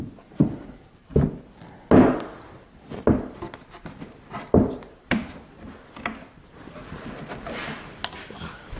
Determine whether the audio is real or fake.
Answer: real